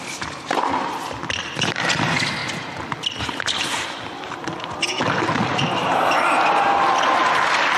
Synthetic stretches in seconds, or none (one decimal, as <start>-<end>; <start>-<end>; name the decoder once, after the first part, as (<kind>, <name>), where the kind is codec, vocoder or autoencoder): none